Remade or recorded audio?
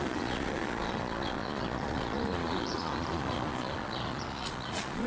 remade